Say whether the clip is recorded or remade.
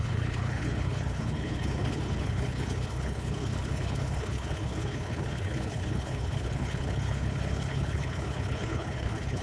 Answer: remade